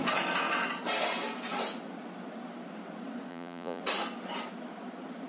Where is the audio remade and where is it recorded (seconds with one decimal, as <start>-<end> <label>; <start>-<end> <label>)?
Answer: 0.0-3.3 recorded; 3.3-3.8 remade; 3.8-5.3 recorded